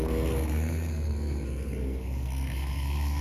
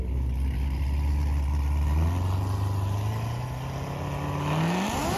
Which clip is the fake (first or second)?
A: first